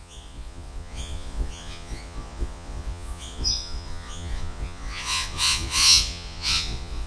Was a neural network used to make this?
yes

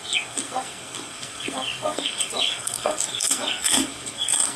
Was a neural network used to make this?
yes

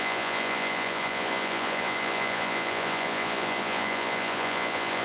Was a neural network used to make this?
yes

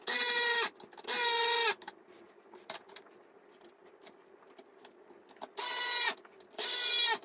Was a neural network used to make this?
no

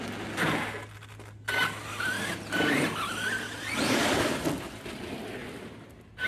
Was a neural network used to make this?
no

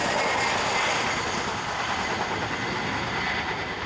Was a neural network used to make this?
no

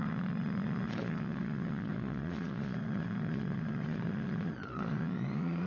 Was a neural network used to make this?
yes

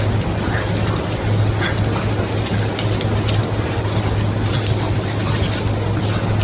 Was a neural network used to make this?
no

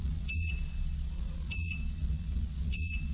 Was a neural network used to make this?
yes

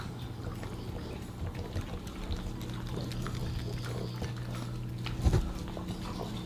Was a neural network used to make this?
no